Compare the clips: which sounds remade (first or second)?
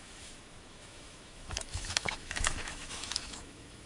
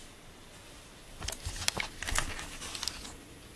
first